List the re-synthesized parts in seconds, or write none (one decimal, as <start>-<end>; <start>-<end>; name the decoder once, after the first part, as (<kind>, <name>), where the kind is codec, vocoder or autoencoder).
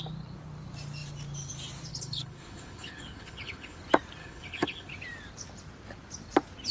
1.9-3.8 (codec, HILCodec); 4.2-4.9